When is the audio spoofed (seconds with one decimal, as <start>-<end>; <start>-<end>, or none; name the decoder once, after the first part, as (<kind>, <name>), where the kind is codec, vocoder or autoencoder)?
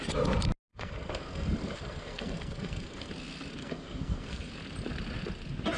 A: 0.7-3.1 (codec, SNAC); 3.6-4.5